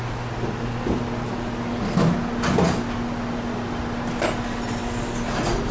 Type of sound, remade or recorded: recorded